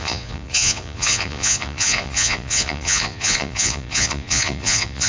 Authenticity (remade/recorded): remade